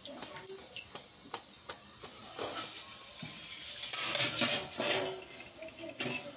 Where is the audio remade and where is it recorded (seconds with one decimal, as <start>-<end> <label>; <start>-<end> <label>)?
0.0-6.4 recorded